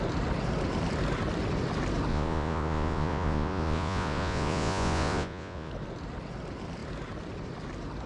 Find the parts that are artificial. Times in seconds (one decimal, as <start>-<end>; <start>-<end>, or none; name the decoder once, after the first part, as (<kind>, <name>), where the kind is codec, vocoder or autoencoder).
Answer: 2.1-5.7 (vocoder, Vocos)